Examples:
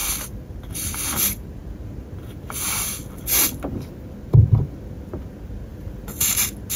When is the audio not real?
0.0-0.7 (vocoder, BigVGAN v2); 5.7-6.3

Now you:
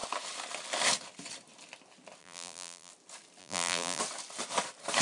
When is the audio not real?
2.2-2.9 (vocoder, BigVGAN v2); 3.4-4.0

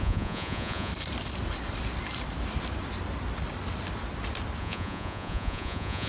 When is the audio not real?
0.0-0.9 (vocoder, Vocos); 4.6-6.1

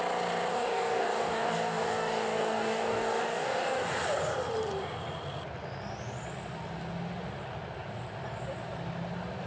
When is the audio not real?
0.5-3.9 (codec, DAC)

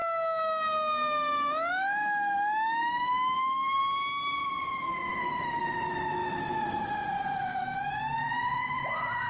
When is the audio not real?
1.7-3.8 (autoencoder, DAC-VAE); 4.9-9.3

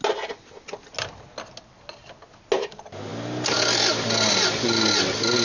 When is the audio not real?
none

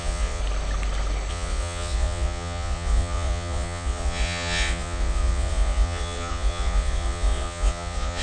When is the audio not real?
0.0-0.4 (vocoder, Vocos); 1.3-8.2

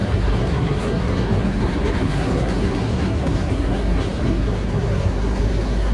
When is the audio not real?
0.0-5.9 (codec, SNAC)